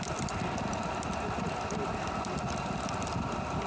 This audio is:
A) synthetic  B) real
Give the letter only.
B